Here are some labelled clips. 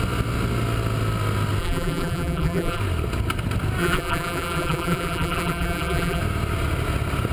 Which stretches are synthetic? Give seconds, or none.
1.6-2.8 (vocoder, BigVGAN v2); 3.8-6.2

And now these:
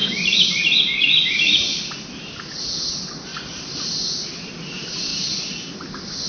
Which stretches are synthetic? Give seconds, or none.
5.1-5.7 (vocoder, BigVGAN v2)